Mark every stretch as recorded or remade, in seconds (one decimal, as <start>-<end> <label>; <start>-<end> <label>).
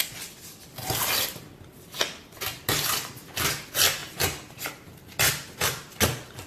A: 0.0-4.0 recorded; 4.0-4.7 remade; 4.7-6.5 recorded